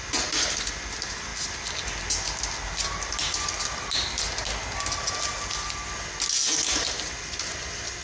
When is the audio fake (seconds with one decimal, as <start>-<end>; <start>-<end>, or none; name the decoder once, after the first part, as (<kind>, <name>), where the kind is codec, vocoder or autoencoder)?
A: none